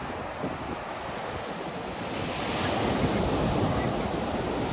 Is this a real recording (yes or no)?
yes